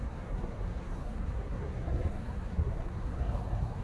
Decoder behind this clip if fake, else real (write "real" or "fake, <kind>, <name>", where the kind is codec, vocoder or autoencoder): fake, codec, SNAC